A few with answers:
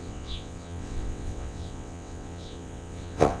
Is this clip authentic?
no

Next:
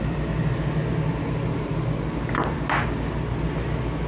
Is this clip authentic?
yes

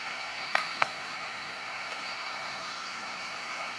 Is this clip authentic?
no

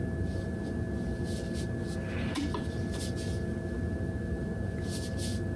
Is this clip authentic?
yes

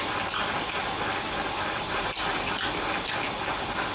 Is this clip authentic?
yes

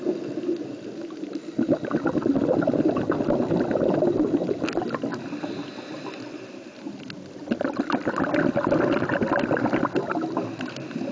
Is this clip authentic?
yes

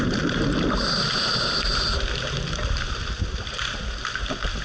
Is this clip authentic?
yes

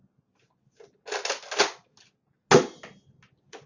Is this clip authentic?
yes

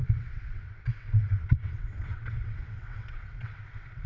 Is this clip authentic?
no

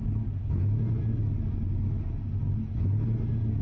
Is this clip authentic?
yes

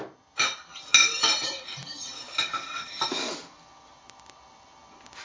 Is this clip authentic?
yes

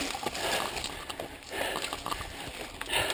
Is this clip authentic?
yes